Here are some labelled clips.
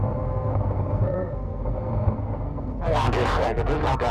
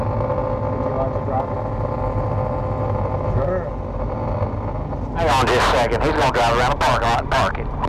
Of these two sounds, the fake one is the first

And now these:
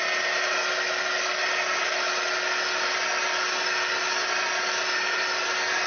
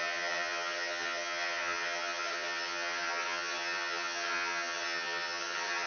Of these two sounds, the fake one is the second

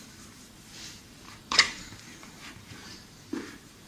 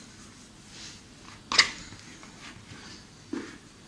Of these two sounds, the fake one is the first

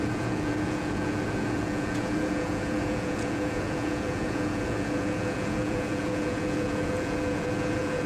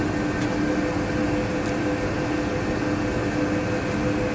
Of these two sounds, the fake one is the first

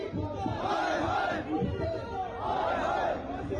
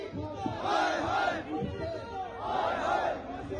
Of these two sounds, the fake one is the first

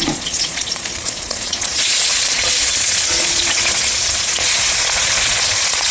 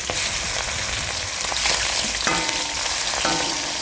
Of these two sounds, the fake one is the first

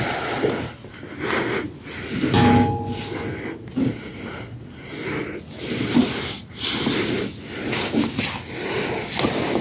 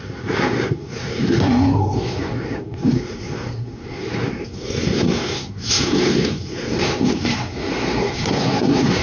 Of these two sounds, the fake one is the second